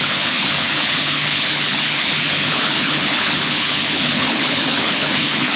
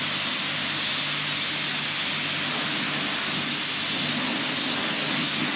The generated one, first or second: first